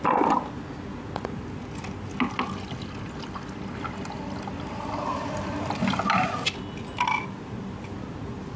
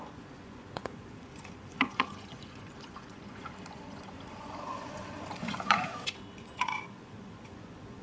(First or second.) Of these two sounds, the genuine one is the first